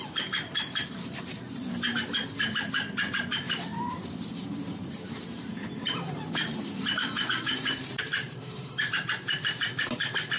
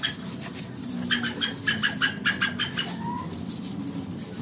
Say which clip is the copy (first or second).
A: first